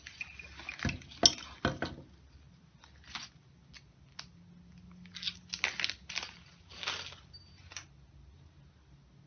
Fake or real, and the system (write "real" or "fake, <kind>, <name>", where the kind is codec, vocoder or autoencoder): real